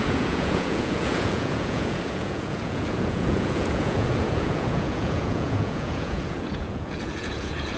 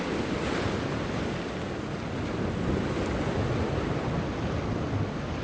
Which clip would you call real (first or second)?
second